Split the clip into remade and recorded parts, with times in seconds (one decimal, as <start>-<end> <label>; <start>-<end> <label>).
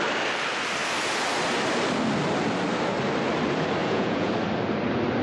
0.0-3.8 recorded; 3.8-4.3 remade; 4.3-5.2 recorded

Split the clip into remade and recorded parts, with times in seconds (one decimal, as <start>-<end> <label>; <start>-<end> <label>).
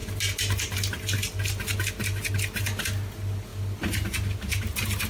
0.0-5.1 recorded